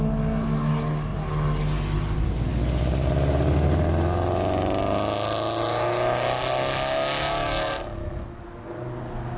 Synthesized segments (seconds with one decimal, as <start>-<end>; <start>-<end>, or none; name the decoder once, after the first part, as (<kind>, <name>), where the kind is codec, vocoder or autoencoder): none